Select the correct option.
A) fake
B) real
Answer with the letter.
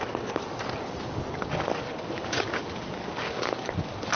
A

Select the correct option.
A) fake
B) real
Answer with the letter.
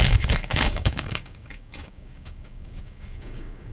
A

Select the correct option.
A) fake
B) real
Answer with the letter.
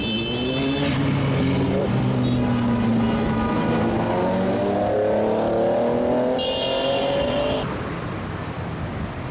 B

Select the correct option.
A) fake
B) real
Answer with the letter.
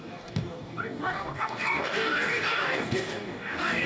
A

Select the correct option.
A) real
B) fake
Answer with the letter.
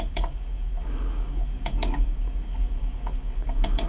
B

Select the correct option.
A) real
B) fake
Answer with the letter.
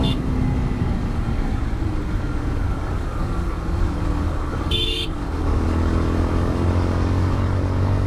B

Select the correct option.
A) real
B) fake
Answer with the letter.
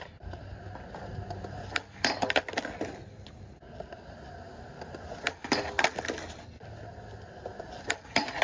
A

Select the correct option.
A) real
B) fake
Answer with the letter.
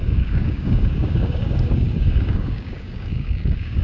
B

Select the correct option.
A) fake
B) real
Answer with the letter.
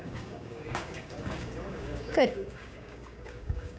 A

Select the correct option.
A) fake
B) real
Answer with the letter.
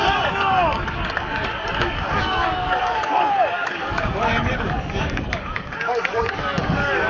A